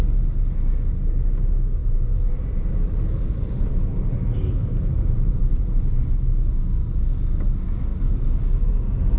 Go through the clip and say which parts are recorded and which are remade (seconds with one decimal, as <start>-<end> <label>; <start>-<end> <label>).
0.0-1.8 recorded; 1.8-6.0 remade; 6.0-9.2 recorded